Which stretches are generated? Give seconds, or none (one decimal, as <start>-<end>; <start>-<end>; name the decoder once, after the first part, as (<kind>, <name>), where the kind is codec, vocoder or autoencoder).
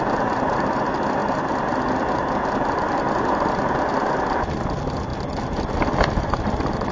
none